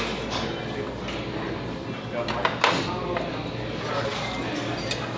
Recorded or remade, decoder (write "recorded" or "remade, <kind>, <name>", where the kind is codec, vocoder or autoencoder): recorded